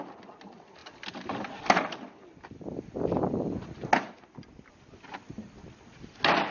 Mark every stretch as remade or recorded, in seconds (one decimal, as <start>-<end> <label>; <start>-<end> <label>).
0.0-6.5 recorded